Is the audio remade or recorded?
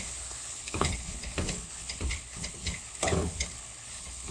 remade